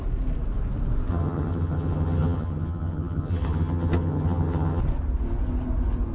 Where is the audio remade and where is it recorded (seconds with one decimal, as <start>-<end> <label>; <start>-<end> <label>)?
0.0-1.1 recorded; 1.1-4.8 remade; 4.8-6.1 recorded